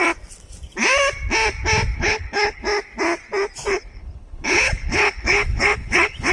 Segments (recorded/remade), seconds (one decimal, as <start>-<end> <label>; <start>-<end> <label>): 0.0-1.9 recorded; 1.9-2.6 remade; 2.6-3.7 recorded; 3.7-6.3 remade